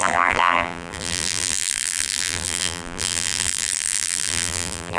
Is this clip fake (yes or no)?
yes